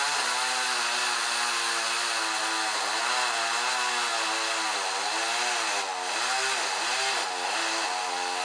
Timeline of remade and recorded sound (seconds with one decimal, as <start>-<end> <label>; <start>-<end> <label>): 0.0-8.4 recorded